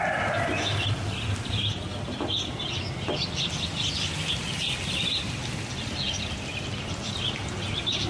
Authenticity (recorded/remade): recorded